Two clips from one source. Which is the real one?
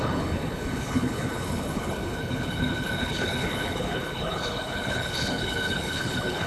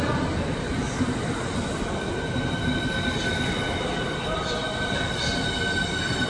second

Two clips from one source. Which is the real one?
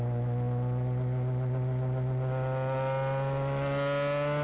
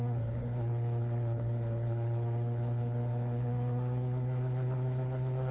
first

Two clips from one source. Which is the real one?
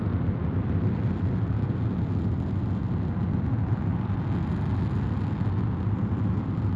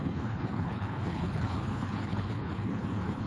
first